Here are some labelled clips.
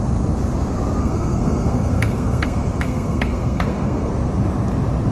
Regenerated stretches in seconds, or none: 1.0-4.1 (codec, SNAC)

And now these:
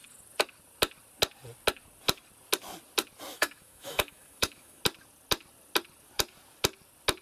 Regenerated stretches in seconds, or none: 3.3-4.8 (autoencoder, DAC-VAE)

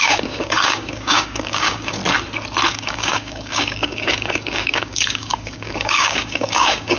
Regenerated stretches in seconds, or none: 0.0-2.0 (codec, DAC); 2.7-7.0

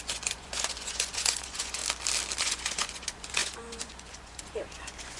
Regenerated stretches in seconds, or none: 0.0-1.8 (vocoder, Vocos); 2.4-5.2

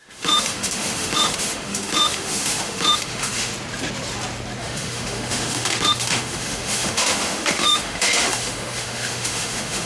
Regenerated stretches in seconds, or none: 0.0-3.5 (autoencoder, DAC-VAE); 4.6-9.9